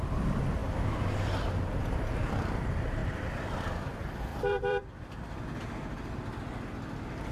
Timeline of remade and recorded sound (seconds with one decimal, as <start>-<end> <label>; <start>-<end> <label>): 0.0-3.0 recorded; 3.0-3.7 remade; 3.7-4.3 recorded; 4.3-5.4 remade; 5.4-7.3 recorded